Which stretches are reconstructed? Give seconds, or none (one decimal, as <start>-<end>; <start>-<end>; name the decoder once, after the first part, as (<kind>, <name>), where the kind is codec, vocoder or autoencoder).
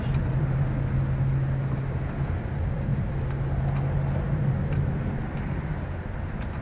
none